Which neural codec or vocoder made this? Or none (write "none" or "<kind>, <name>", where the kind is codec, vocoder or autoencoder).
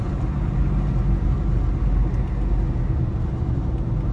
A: none